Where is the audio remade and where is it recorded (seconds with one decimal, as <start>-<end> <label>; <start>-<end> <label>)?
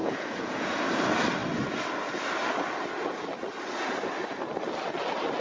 0.0-0.7 remade; 0.7-5.4 recorded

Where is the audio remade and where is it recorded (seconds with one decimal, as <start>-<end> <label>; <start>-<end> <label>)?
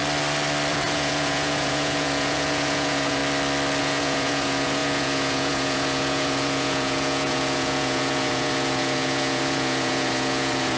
0.0-0.7 recorded; 0.7-3.2 remade; 3.2-3.8 recorded; 3.8-10.8 remade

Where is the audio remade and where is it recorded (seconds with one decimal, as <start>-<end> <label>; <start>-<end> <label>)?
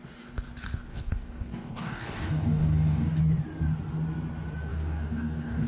0.0-0.9 recorded; 0.9-3.2 remade; 3.2-4.7 recorded; 4.7-5.7 remade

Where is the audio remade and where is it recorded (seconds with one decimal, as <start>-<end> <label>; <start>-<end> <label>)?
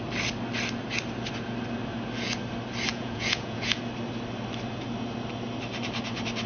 0.0-2.9 recorded; 2.9-3.8 remade; 3.8-6.5 recorded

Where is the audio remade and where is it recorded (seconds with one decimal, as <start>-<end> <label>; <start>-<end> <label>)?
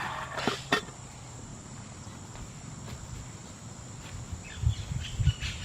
0.0-5.6 recorded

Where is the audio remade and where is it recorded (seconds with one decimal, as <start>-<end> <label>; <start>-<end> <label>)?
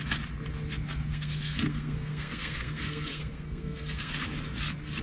0.0-1.1 recorded; 1.1-4.1 remade; 4.1-5.0 recorded